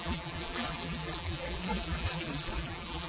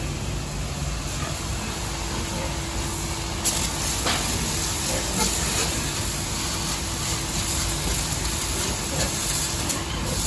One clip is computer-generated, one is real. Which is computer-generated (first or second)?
first